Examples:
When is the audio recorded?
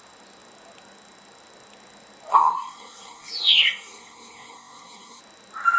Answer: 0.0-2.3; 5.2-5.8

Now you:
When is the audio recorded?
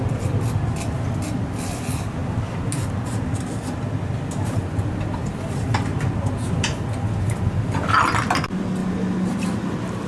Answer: 0.0-10.1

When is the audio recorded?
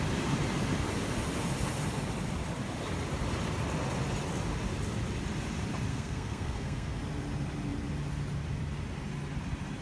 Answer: 0.0-5.9; 7.0-9.8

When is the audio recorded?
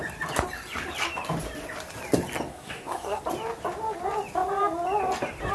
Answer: 0.0-2.5; 3.2-5.5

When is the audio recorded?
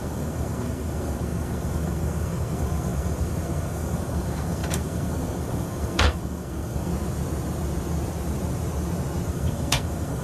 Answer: 6.9-9.3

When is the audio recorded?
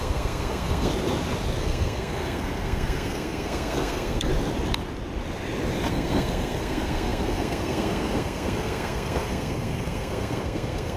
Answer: 0.9-1.6; 4.3-5.9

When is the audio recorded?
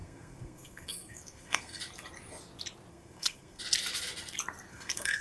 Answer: 1.8-2.9; 3.6-4.7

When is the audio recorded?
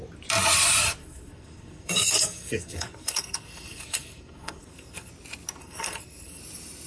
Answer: 0.0-1.0; 5.1-5.6; 6.4-6.9